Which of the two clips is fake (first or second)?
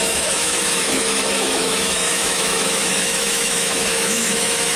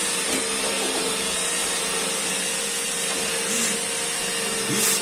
first